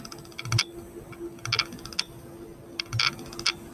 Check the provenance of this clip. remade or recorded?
recorded